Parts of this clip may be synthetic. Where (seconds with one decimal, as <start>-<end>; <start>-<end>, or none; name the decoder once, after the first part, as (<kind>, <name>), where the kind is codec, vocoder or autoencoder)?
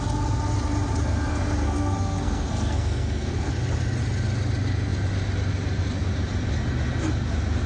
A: 1.3-3.5 (codec, SNAC)